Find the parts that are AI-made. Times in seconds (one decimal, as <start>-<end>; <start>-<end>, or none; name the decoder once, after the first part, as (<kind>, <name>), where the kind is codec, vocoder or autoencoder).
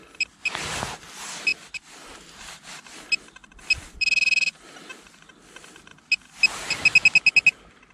none